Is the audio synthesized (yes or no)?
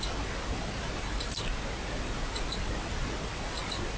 no